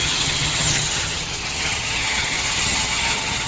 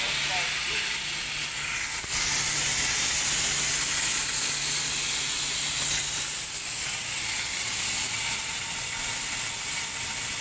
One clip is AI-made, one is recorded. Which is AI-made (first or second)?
first